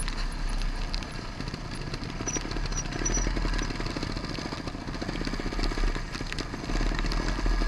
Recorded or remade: recorded